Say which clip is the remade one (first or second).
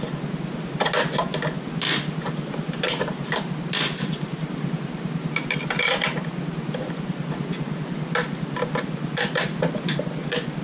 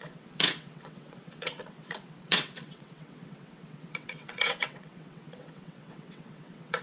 second